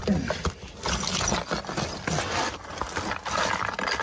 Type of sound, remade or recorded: recorded